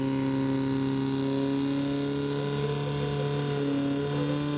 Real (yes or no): yes